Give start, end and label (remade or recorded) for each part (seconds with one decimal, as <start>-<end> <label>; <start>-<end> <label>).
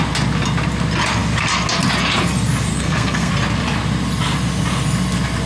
0.0-2.7 recorded; 2.7-3.3 remade; 3.3-5.5 recorded